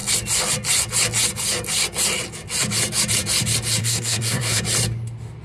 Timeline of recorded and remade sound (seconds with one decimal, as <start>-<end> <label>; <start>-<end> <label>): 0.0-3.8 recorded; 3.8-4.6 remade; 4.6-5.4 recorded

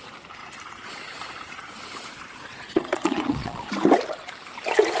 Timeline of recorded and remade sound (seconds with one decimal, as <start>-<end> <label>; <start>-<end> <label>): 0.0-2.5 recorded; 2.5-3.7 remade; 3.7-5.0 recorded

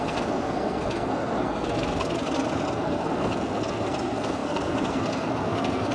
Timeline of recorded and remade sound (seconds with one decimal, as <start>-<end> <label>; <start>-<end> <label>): 0.0-5.9 remade

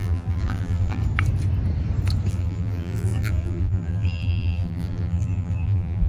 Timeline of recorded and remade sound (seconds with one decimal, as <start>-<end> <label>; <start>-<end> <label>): 0.0-1.0 remade; 1.0-2.3 recorded; 2.3-6.1 remade

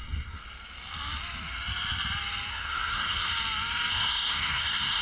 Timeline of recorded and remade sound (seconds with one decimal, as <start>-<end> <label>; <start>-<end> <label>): 0.0-0.4 remade; 0.4-2.5 recorded; 2.5-3.3 remade; 3.3-3.9 recorded; 3.9-5.0 remade